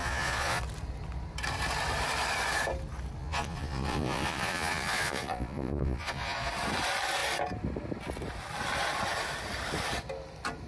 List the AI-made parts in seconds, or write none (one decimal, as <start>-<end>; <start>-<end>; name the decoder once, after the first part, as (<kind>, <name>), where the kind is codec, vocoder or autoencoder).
0.0-0.6 (vocoder, Vocos); 3.2-6.5